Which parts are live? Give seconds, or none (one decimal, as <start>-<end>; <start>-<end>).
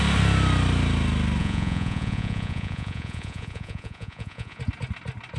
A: 0.0-1.4; 4.6-5.4